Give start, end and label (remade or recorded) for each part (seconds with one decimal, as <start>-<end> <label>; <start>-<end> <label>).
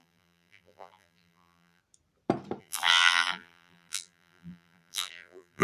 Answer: 0.0-1.8 remade; 1.8-2.6 recorded; 2.6-5.6 remade